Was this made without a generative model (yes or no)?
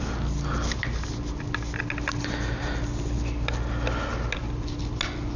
yes